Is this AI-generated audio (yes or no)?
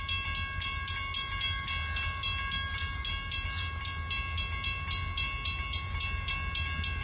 no